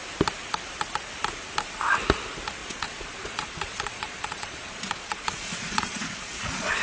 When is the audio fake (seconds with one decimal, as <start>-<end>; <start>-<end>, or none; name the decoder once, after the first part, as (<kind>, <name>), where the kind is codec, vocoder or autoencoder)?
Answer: 2.6-6.8 (vocoder, Vocos)